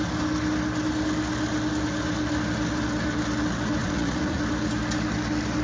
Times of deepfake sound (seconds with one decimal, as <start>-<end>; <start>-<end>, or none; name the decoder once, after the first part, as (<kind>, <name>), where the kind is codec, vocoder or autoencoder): 3.8-4.4 (vocoder, Vocos)